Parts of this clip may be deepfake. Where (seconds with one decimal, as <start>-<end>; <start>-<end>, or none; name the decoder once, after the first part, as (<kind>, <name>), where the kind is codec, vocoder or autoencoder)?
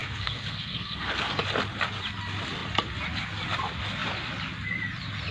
0.0-1.3 (codec, SNAC)